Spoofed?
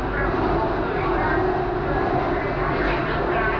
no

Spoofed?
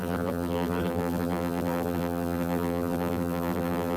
yes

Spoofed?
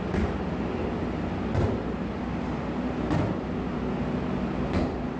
no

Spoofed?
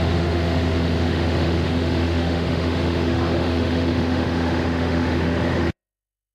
yes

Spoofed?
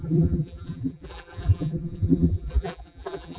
yes